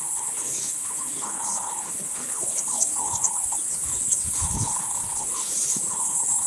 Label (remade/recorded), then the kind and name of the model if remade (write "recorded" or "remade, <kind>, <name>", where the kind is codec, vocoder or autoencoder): remade, codec, HILCodec